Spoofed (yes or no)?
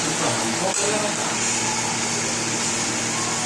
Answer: no